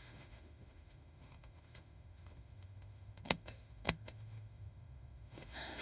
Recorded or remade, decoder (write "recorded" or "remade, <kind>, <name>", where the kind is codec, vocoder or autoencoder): remade, autoencoder, DAC-VAE